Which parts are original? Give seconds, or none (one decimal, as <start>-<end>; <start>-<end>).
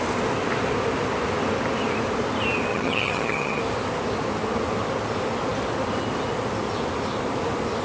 0.0-2.7; 3.6-7.8